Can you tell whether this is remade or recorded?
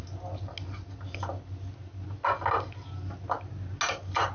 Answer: recorded